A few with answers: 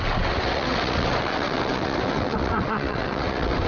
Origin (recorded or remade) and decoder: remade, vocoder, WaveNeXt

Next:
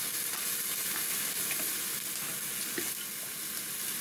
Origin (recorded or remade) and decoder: recorded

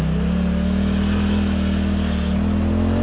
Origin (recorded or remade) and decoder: recorded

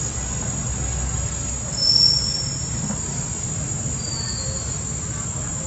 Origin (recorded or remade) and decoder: recorded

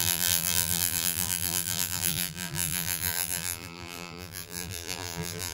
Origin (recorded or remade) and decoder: remade, vocoder, BigVGAN v2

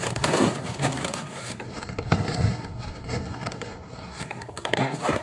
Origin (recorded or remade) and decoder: remade, codec, SNAC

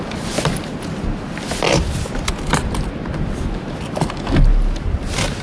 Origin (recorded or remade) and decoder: recorded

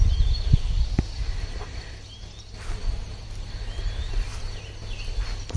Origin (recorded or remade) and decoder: recorded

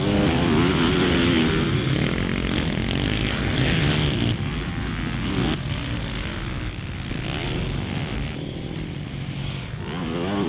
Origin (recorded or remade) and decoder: recorded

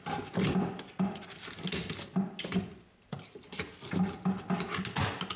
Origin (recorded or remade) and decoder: recorded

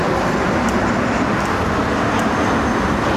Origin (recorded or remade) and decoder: recorded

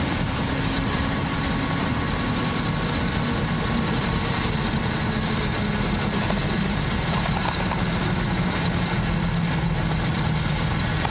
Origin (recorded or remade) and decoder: recorded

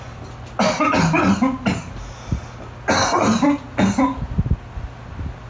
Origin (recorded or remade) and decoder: recorded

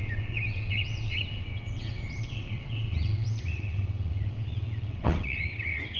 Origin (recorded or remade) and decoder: remade, vocoder, WaveNeXt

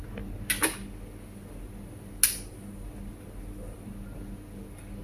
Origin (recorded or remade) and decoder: recorded